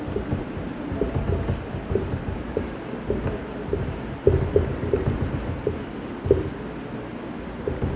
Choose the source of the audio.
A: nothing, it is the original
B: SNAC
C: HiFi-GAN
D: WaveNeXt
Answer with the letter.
A